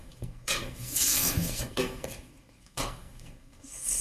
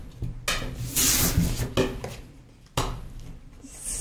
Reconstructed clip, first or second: first